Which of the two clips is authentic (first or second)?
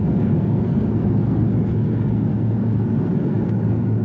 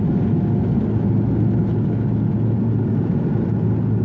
second